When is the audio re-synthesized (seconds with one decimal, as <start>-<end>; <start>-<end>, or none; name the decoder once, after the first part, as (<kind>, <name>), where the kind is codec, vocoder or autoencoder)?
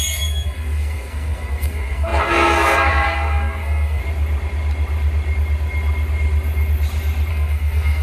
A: 0.0-4.0 (codec, SNAC); 7.3-8.0